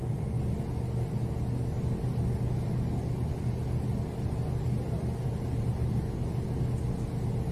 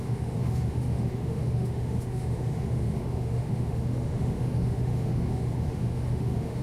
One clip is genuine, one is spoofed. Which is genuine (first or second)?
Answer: first